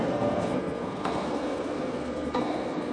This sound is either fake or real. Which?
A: fake